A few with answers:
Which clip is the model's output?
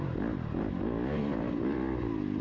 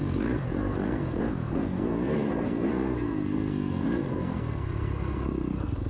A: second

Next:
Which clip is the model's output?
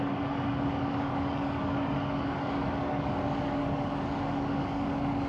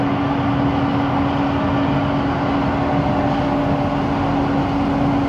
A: first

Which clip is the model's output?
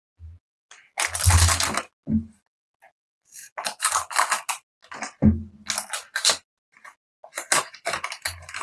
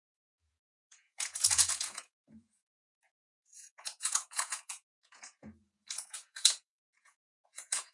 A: second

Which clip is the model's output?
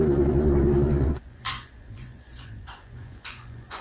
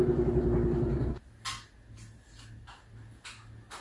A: first